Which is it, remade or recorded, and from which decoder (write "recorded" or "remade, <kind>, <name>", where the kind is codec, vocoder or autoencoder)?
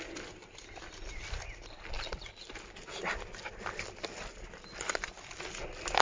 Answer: recorded